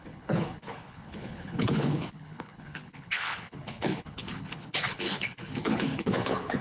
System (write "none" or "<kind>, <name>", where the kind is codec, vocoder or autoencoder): codec, HILCodec